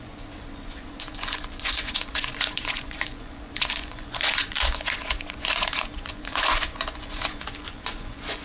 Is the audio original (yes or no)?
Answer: no